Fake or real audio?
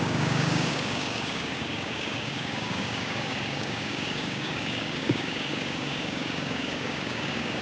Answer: fake